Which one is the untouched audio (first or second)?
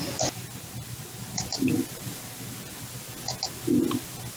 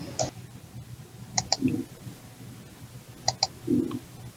second